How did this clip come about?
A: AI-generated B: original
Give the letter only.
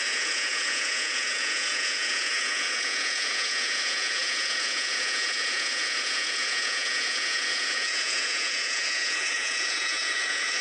A